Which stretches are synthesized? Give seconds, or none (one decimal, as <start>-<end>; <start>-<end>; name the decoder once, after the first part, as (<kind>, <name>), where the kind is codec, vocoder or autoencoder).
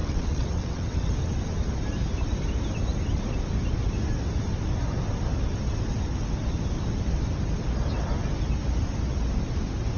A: 0.0-1.1 (vocoder, WaveNeXt)